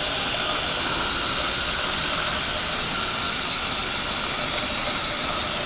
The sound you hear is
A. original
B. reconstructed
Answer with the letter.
A